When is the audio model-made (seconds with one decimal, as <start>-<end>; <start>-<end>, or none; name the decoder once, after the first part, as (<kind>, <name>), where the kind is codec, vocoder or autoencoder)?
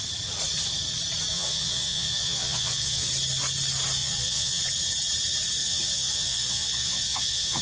1.3-3.1 (vocoder, Vocos); 4.0-4.6; 5.6-7.6